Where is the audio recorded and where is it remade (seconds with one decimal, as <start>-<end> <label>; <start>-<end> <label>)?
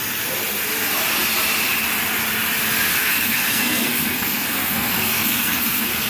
0.0-2.9 recorded; 2.9-6.1 remade